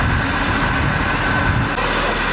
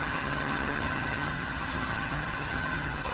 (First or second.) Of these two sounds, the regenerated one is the second